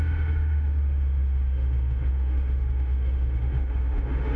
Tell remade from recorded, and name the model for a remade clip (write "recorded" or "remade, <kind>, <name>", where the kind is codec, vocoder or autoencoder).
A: remade, autoencoder, DAC-VAE